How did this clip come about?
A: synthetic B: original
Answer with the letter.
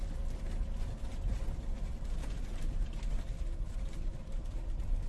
B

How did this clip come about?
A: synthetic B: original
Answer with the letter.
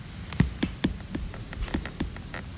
B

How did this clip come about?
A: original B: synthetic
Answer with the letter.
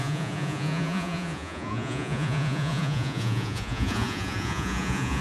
B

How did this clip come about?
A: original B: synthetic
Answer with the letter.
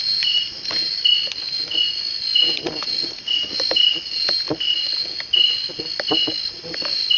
A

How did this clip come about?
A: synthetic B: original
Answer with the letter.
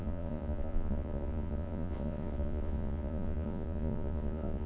A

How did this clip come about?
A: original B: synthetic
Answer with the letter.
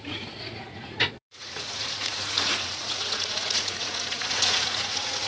B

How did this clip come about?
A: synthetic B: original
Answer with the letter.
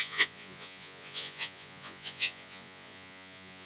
A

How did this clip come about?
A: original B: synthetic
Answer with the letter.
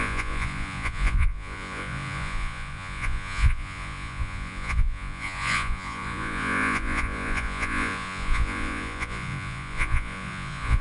B